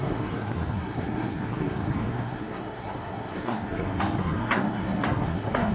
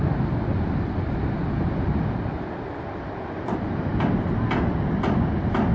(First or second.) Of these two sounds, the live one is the second